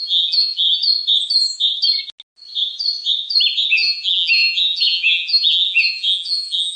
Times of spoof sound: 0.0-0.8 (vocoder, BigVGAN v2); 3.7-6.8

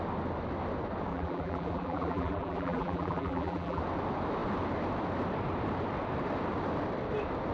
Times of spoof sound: 1.1-3.8 (vocoder, BigVGAN v2)

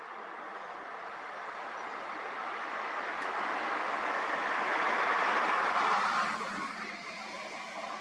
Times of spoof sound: 2.4-5.1 (autoencoder, DAC-VAE)